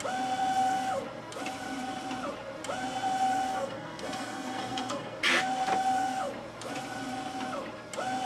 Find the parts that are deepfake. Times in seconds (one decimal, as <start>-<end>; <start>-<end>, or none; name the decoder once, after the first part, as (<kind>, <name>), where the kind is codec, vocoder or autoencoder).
3.5-5.2 (codec, SNAC)